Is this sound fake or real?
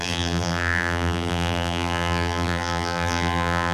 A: fake